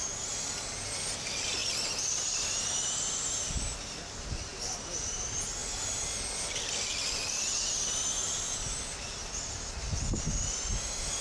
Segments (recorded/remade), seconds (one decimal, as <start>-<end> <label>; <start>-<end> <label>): 0.0-11.2 recorded